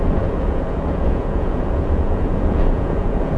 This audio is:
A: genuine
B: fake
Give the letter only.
B